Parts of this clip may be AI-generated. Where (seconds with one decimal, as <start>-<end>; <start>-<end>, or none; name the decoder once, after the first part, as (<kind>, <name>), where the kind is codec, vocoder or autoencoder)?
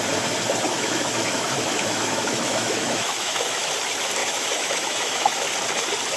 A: 0.7-3.7 (autoencoder, DAC-VAE); 4.2-5.5